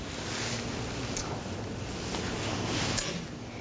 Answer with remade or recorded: recorded